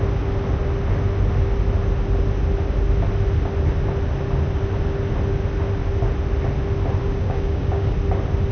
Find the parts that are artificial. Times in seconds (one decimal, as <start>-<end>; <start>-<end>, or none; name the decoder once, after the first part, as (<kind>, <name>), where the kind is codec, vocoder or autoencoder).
7.0-7.9 (codec, DAC)